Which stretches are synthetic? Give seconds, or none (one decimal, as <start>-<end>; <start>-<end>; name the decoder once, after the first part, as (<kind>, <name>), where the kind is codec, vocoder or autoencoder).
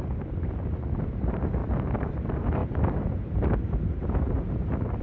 0.0-1.6 (vocoder, BigVGAN v2); 2.1-5.0